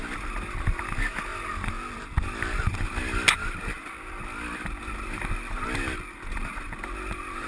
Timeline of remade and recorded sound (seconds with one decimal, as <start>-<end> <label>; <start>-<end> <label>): 0.0-7.5 recorded